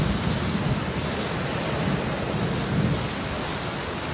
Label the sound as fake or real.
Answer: real